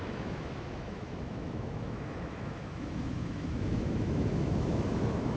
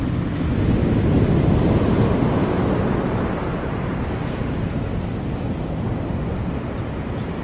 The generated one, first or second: first